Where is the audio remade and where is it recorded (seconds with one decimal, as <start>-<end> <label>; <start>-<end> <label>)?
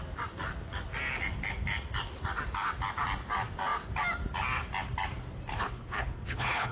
0.0-5.5 recorded; 5.5-6.7 remade